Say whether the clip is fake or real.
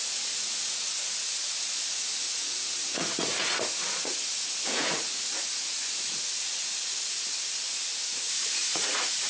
fake